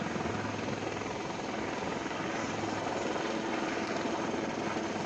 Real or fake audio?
real